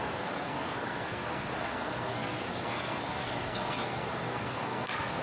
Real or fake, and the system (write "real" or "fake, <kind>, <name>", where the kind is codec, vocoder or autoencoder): fake, codec, SNAC